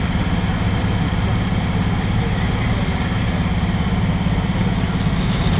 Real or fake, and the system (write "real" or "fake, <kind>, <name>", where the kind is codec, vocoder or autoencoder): real